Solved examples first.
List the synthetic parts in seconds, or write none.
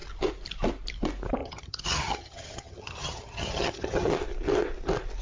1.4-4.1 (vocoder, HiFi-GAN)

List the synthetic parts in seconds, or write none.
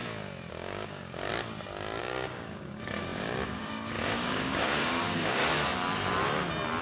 0.5-1.3 (codec, DAC); 2.0-5.4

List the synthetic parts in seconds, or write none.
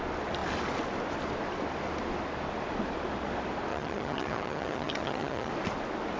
3.7-5.5 (vocoder, HiFi-GAN)